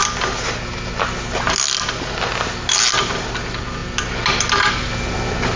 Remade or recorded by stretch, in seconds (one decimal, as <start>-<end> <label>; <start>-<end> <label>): 0.0-5.6 recorded